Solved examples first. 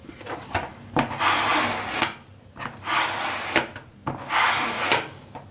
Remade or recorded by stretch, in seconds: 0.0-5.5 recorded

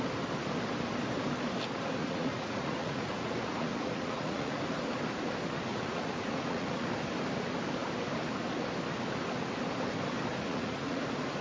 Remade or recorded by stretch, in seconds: 0.0-2.0 recorded; 2.0-4.6 remade; 4.6-5.7 recorded; 5.7-6.9 remade; 6.9-10.3 recorded; 10.3-11.0 remade; 11.0-11.4 recorded

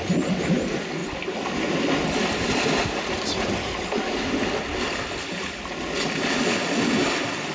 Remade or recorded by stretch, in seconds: 0.0-7.5 recorded

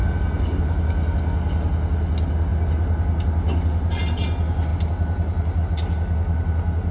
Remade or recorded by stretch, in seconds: 0.0-6.9 recorded

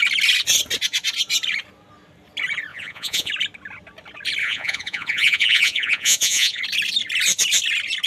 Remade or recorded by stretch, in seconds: 0.0-2.7 recorded; 2.7-3.3 remade; 3.3-4.4 recorded; 4.4-6.6 remade; 6.6-8.1 recorded

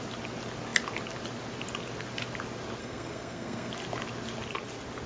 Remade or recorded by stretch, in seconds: 0.0-2.8 recorded; 2.8-3.7 remade; 3.7-5.1 recorded

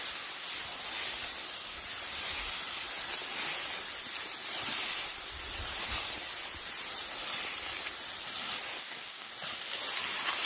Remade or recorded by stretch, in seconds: 0.0-8.8 recorded; 8.8-9.3 remade; 9.3-10.5 recorded

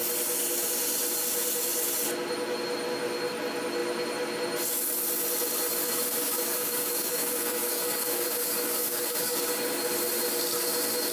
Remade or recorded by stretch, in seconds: 0.0-5.8 recorded; 5.8-9.5 remade; 9.5-11.1 recorded